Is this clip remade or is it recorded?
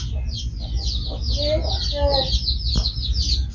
recorded